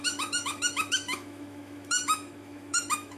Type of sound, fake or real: fake